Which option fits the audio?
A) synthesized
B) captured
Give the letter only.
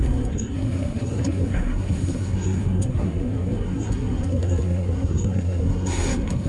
A